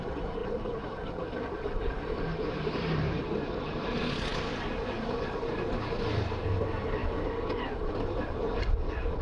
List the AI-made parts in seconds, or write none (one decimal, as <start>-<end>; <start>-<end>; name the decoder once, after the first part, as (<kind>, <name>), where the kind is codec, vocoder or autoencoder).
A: 0.4-3.2 (vocoder, BigVGAN v2)